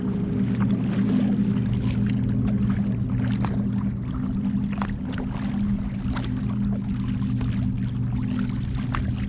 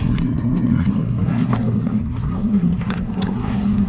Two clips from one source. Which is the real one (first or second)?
first